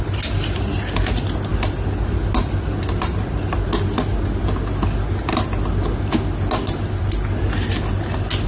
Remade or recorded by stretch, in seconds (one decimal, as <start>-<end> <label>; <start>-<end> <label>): 0.0-8.5 recorded

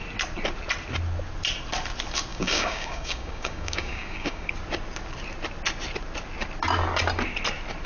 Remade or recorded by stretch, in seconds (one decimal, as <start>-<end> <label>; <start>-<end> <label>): 0.0-2.3 recorded; 2.3-4.5 remade; 4.5-7.9 recorded

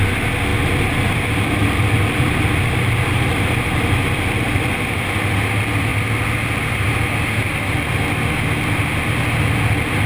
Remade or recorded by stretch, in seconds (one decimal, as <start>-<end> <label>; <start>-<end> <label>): 0.0-0.5 recorded; 0.5-5.3 remade; 5.3-10.1 recorded

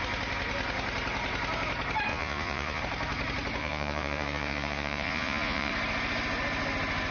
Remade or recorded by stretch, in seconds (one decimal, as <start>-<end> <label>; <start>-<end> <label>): 0.0-2.1 recorded; 2.1-2.8 remade; 2.8-3.6 recorded; 3.6-5.7 remade; 5.7-7.1 recorded